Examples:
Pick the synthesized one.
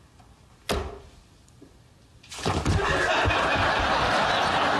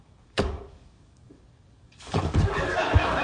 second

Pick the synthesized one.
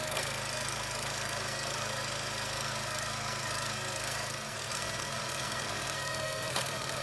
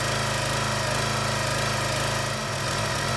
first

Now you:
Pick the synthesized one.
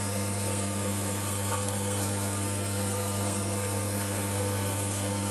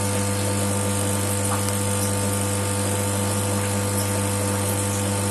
first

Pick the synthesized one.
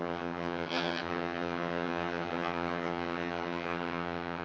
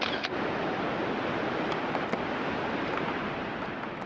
first